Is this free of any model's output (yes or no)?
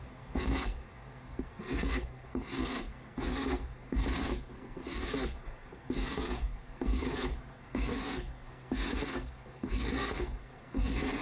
no